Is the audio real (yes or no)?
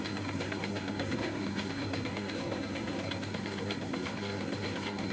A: no